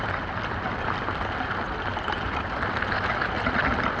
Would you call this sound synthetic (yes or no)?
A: no